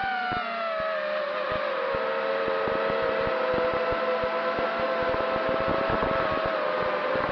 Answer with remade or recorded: recorded